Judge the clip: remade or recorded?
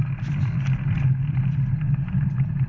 recorded